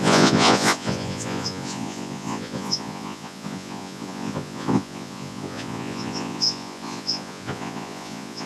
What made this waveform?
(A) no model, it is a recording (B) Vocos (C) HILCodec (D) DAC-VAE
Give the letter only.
B